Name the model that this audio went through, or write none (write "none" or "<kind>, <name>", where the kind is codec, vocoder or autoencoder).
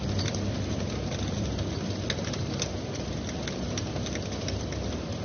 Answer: none